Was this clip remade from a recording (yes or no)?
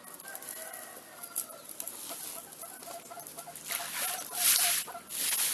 no